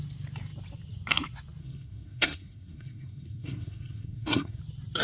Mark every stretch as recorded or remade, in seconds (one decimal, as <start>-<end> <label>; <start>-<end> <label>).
0.0-1.6 recorded; 1.6-4.6 remade; 4.6-5.0 recorded